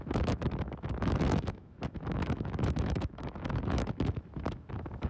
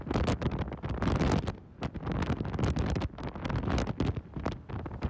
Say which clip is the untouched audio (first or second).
second